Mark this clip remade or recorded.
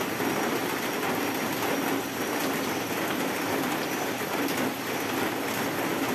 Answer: recorded